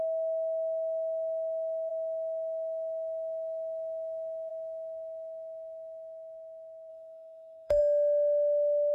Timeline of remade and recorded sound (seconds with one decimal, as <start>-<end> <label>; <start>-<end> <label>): 0.0-6.9 recorded; 6.9-7.8 remade; 7.8-8.9 recorded